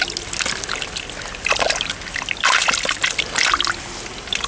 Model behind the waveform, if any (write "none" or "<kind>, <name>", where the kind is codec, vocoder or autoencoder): none